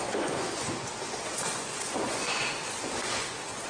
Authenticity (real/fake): fake